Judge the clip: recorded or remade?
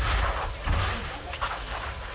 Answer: recorded